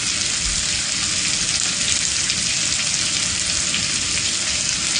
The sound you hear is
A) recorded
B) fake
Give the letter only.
A